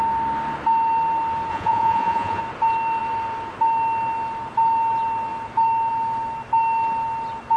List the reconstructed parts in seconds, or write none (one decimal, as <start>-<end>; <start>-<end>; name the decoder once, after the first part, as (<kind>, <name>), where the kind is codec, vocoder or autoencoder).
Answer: 1.5-2.4 (vocoder, Vocos)